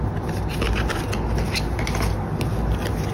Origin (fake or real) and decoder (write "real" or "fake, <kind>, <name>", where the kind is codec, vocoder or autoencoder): real